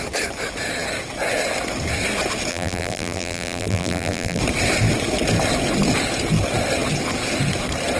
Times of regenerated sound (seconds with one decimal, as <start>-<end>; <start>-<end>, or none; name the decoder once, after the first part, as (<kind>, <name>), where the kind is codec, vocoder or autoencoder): 2.5-4.4 (vocoder, BigVGAN v2)